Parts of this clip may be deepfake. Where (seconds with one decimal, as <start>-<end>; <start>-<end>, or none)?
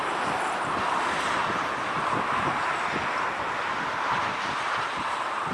0.0-1.4; 4.0-5.5